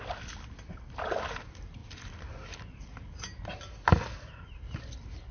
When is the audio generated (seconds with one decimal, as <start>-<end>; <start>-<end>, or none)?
none